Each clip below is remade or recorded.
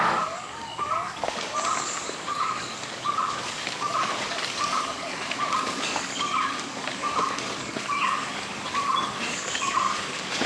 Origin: remade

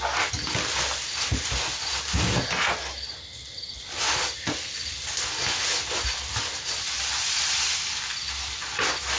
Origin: recorded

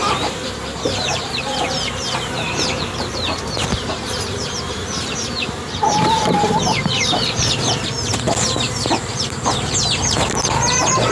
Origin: remade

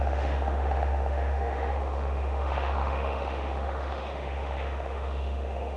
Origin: remade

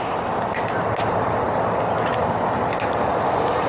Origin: recorded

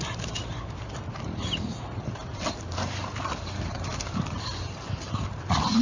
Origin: remade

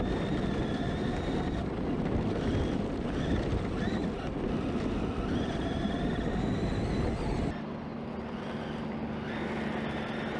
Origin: recorded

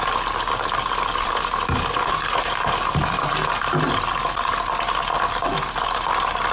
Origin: recorded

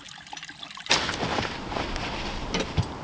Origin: recorded